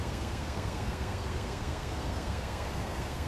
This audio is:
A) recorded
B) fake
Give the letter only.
B